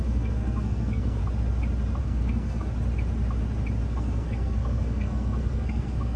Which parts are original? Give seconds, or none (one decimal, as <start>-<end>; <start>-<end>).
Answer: 1.2-2.0; 2.7-3.9